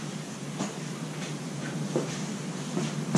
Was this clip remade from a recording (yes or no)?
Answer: no